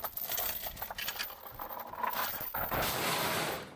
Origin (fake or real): real